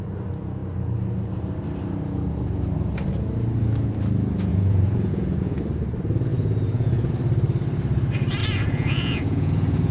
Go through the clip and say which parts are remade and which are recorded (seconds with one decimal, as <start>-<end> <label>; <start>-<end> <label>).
0.0-4.5 recorded; 4.5-5.6 remade; 5.6-6.3 recorded; 6.3-7.1 remade; 7.1-8.4 recorded; 8.4-9.9 remade